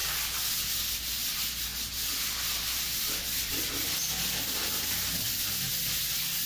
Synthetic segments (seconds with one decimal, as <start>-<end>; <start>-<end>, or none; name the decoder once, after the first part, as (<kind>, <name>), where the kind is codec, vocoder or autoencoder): none